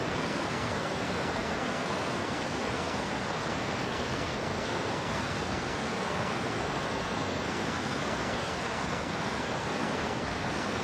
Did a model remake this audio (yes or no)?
yes